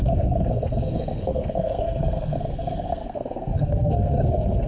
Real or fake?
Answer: fake